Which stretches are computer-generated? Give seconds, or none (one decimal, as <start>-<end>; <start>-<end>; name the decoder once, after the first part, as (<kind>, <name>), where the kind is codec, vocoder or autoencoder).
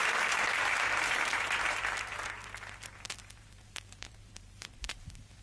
3.2-5.4 (vocoder, BigVGAN v2)